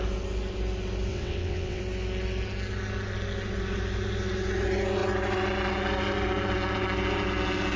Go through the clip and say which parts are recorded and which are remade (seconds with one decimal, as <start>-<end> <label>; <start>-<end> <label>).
0.0-1.1 recorded; 1.1-1.8 remade; 1.8-7.8 recorded